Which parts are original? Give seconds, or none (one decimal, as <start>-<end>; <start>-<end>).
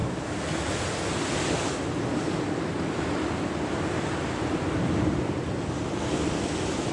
0.0-6.9